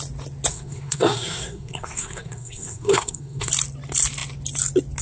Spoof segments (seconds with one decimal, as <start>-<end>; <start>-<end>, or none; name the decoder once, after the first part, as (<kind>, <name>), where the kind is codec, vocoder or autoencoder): 0.5-3.5 (codec, SNAC)